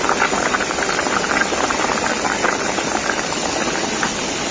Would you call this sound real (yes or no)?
yes